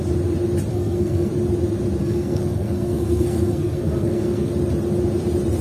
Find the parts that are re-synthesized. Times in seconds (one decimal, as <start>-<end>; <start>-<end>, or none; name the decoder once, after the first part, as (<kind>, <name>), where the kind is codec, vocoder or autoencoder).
0.7-1.3 (codec, SNAC); 2.0-4.5